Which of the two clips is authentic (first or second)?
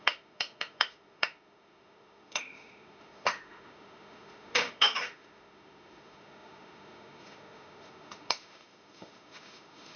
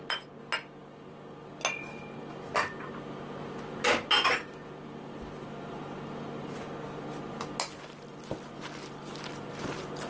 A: second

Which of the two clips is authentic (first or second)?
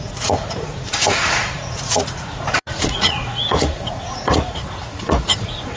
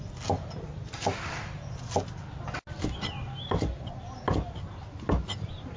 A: second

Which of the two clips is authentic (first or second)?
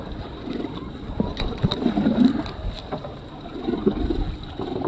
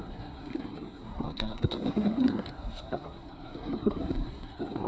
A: first